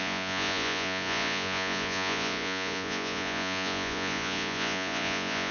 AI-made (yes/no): yes